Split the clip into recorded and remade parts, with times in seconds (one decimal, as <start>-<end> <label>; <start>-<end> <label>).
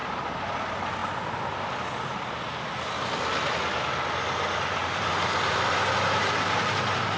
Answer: 0.0-0.6 remade; 0.6-4.8 recorded; 4.8-7.2 remade